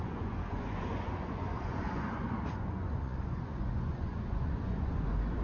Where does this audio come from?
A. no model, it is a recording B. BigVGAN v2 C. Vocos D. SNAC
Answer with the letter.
C